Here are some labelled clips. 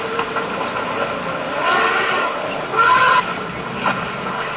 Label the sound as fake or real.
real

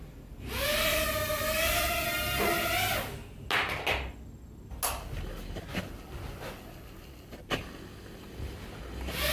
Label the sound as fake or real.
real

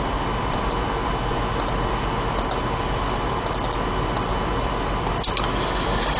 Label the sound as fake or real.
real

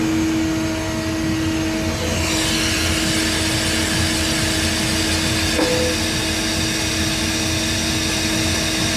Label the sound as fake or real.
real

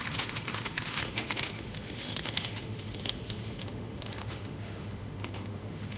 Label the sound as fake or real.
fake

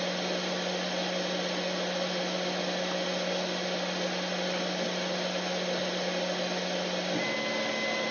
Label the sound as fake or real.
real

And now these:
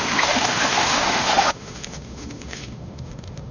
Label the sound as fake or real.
fake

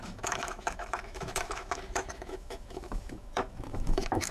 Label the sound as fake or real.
fake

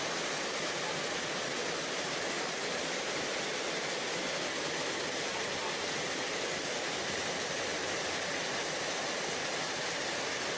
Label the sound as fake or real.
real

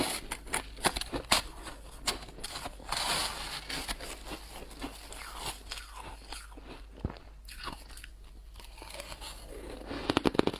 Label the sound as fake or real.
real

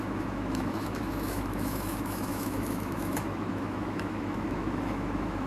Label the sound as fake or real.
fake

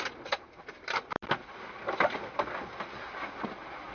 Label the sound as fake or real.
real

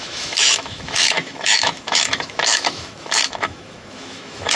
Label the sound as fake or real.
fake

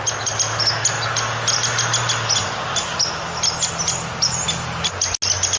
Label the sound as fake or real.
real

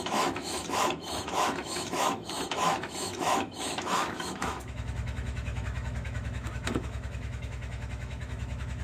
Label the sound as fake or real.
fake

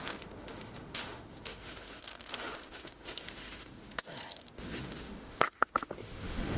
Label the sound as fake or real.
fake